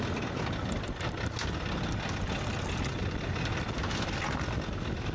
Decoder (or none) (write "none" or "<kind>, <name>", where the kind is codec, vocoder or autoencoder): none